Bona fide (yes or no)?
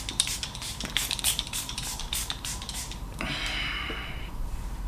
no